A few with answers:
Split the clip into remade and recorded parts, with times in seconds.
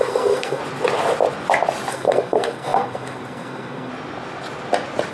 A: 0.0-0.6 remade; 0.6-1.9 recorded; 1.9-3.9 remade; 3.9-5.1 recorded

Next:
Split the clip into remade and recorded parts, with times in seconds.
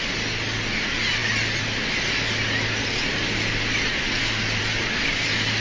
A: 0.0-5.6 recorded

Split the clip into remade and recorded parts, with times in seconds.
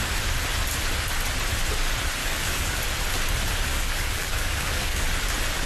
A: 0.0-2.2 recorded; 2.2-2.8 remade; 2.8-3.7 recorded; 3.7-5.0 remade; 5.0-5.7 recorded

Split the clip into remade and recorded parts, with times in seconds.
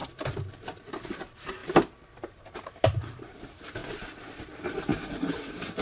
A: 0.0-0.9 recorded; 0.9-1.6 remade; 1.6-2.2 recorded; 2.2-3.8 remade; 3.8-4.4 recorded; 4.4-5.8 remade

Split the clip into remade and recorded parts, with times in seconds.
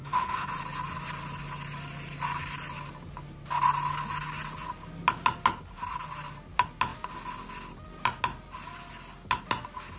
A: 0.0-0.5 remade; 0.5-10.0 recorded